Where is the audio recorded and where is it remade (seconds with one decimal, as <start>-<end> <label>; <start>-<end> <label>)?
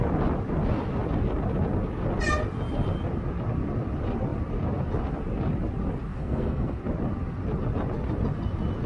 0.0-6.1 recorded; 6.1-6.8 remade; 6.8-8.9 recorded